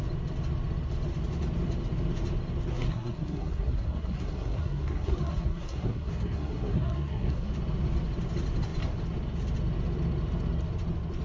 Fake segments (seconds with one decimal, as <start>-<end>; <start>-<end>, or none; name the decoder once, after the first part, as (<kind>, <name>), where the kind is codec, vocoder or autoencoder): 2.7-7.5 (codec, SNAC)